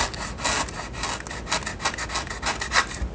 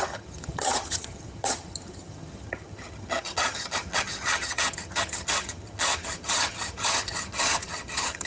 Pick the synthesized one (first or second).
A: second